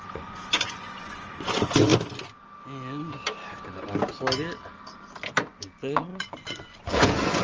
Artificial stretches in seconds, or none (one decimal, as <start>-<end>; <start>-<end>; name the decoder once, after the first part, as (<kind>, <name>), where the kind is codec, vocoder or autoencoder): 0.0-1.9 (vocoder, Vocos); 5.5-7.4